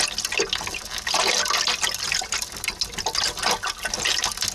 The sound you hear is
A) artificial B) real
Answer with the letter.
B